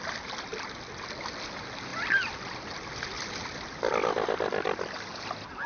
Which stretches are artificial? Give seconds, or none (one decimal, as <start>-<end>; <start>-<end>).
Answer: 0.5-1.2; 1.9-3.9